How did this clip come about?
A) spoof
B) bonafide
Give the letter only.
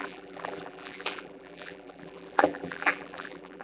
A